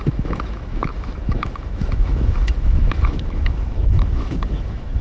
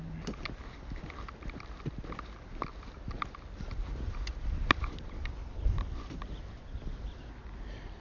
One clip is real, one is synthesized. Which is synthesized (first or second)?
first